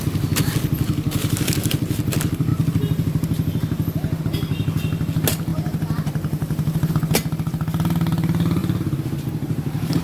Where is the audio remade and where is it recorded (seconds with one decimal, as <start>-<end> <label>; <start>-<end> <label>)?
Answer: 0.0-5.5 recorded; 5.5-6.9 remade; 6.9-8.6 recorded; 8.6-10.0 remade